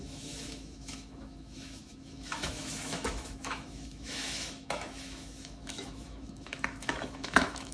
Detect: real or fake fake